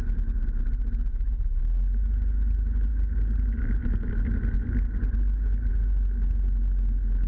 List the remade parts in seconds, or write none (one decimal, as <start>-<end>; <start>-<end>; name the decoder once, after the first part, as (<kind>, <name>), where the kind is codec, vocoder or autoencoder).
1.1-1.6 (codec, HILCodec)